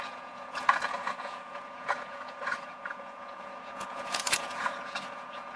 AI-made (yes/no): yes